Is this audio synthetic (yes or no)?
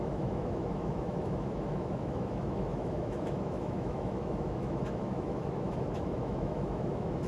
yes